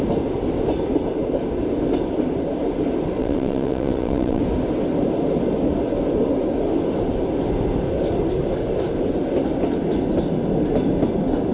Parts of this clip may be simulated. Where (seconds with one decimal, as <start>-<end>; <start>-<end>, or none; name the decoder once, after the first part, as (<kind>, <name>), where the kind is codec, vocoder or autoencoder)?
3.2-4.4 (vocoder, WaveNeXt)